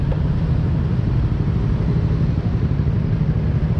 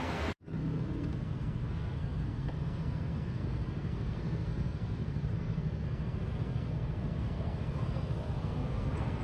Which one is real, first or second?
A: first